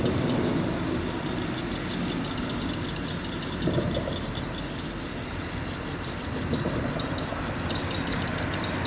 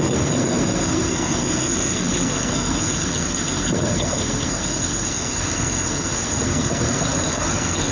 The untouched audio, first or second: first